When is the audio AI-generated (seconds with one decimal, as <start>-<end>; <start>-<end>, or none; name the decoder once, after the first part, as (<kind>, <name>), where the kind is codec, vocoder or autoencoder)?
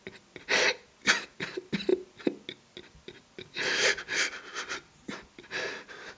none